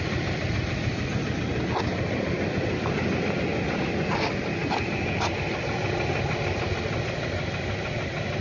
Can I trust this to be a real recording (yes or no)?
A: yes